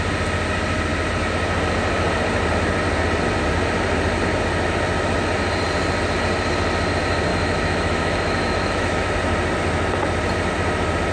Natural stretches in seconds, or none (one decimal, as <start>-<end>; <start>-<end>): 0.0-7.3; 9.1-11.1